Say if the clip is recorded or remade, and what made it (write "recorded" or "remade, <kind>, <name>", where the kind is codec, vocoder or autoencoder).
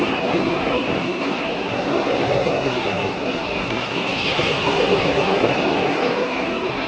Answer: remade, codec, SNAC